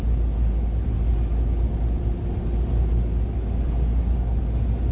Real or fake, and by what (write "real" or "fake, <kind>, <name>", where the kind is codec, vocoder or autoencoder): real